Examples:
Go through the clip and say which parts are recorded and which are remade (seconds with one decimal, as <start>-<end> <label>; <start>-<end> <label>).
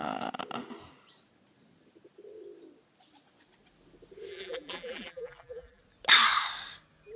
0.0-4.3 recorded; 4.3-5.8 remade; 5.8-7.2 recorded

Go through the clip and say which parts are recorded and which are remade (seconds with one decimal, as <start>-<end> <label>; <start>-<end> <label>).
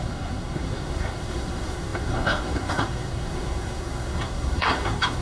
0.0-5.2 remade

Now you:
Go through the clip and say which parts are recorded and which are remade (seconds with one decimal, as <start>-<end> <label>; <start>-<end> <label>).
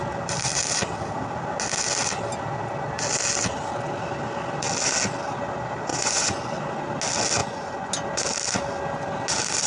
0.0-5.9 recorded; 5.9-6.4 remade; 6.4-7.4 recorded; 7.4-7.9 remade; 7.9-9.7 recorded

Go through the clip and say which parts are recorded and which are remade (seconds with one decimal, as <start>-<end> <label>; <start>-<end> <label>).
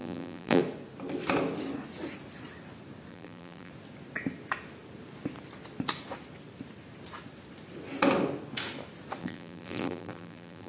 0.0-0.6 remade; 0.6-3.1 recorded; 3.1-3.7 remade; 3.7-9.2 recorded; 9.2-10.7 remade